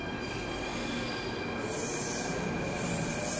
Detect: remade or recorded recorded